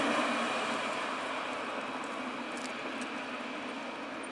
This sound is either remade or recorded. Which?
recorded